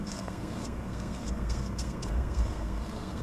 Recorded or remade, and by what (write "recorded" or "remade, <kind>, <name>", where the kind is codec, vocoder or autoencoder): remade, codec, SNAC